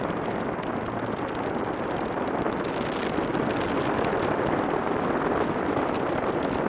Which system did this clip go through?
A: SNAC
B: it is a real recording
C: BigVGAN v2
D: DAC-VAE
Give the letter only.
B